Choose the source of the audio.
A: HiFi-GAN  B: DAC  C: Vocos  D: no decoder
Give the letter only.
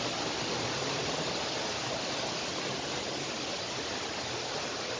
D